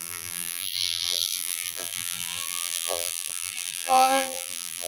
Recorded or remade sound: remade